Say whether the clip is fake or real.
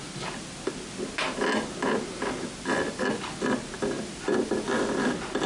real